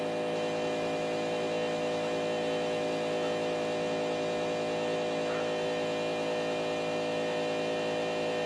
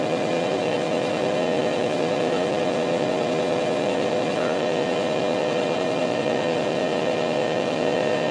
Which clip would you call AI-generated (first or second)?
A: second